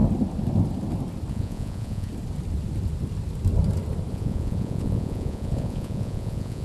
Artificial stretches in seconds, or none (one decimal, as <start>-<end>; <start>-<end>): 1.3-2.1; 4.1-6.6